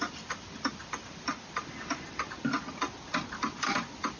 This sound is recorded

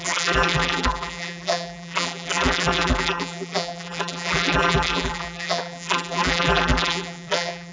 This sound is remade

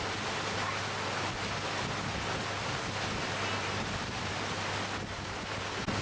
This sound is recorded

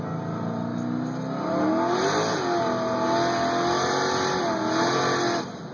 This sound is recorded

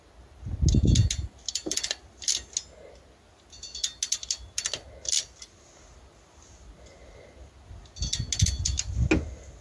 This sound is recorded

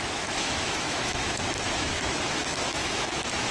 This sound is remade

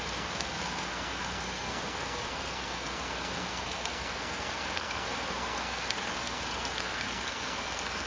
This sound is remade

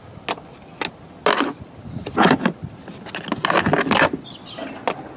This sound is recorded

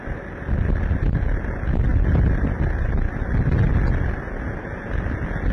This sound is recorded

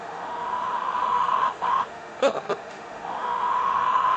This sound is remade